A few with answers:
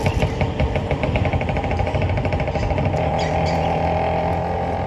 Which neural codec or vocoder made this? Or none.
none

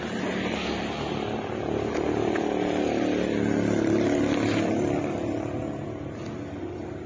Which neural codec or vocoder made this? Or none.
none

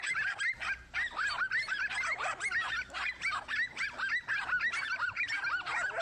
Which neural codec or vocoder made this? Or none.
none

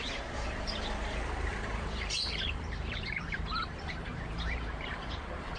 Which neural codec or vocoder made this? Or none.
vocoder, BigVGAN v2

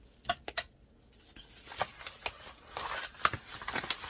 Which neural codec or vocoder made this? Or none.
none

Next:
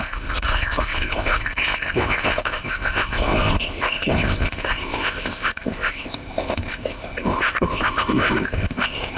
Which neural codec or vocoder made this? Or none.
codec, ZipCodec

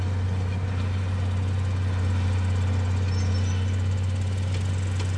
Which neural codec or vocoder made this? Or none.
none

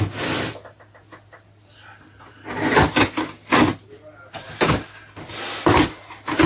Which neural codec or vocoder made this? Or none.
none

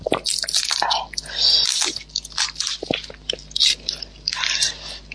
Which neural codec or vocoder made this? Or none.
none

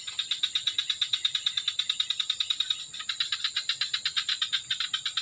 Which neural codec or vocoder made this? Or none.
none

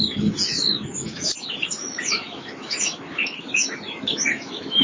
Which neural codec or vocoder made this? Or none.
autoencoder, DAC-VAE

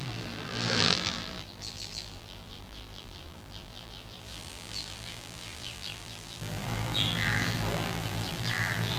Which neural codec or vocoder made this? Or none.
vocoder, BigVGAN v2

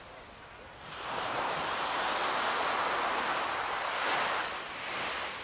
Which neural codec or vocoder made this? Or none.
none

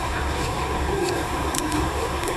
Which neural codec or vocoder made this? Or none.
codec, SNAC